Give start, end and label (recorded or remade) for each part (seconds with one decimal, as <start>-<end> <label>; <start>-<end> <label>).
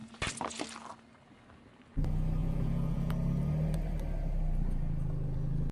0.0-2.4 recorded; 2.4-3.1 remade; 3.1-5.7 recorded